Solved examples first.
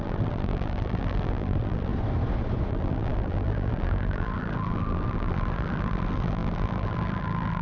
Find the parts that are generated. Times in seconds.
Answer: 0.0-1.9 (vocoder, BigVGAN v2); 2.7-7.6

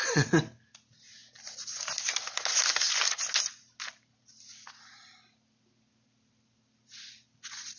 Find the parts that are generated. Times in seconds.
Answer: none

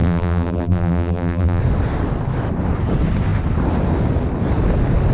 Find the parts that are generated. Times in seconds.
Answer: 0.0-1.6 (vocoder, BigVGAN v2)